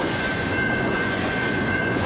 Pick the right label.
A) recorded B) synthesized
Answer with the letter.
B